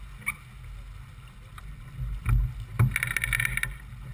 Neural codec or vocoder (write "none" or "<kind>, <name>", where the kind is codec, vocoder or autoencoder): none